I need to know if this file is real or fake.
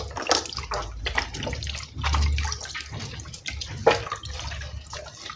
real